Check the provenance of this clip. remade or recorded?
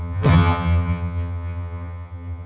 remade